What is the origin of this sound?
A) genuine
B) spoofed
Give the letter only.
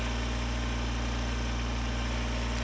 A